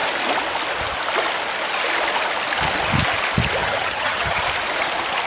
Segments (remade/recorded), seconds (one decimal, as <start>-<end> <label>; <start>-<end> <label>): 0.0-3.6 recorded; 3.6-4.4 remade; 4.4-5.3 recorded